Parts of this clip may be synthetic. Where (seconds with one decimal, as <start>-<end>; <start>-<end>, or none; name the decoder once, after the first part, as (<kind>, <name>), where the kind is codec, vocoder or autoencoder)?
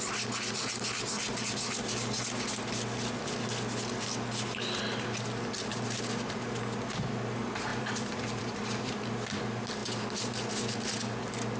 7.7-8.9 (vocoder, BigVGAN v2)